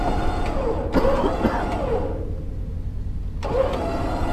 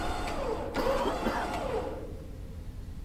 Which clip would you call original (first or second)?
first